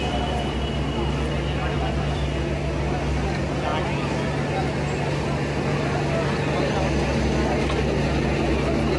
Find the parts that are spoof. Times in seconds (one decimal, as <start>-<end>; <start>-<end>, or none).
none